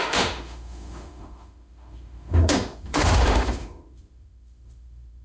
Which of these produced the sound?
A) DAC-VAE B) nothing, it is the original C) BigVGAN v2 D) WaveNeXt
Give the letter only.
A